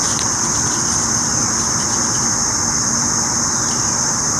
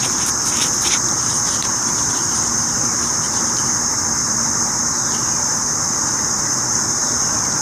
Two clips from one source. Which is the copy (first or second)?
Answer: second